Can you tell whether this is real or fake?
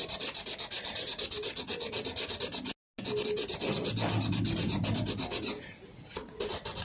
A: real